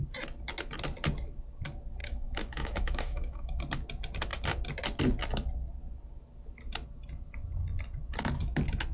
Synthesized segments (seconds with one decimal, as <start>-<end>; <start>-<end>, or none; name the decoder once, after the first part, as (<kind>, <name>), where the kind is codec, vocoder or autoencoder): 2.0-3.6 (autoencoder, DAC-VAE)